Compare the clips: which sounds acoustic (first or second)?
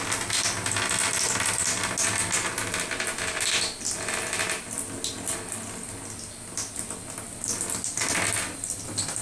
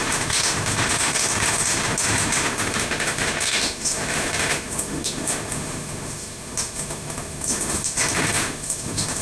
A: first